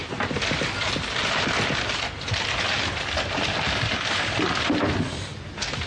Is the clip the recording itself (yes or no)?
yes